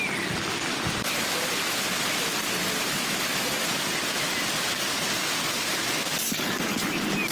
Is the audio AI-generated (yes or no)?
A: no